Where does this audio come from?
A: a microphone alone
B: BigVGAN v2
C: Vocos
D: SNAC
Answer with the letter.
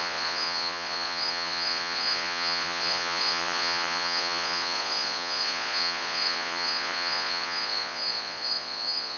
C